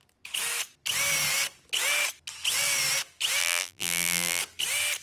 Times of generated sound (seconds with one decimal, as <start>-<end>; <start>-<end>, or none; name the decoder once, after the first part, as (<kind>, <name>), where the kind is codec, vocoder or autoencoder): 3.4-4.4 (vocoder, BigVGAN v2)